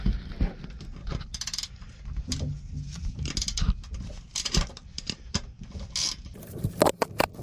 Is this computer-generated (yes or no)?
no